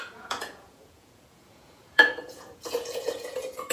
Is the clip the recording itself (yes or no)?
no